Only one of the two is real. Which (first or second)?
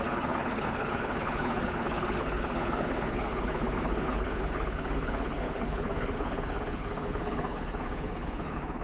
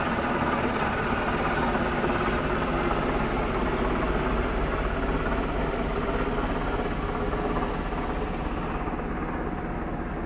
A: second